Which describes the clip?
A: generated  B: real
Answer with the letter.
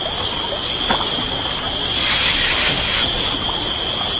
B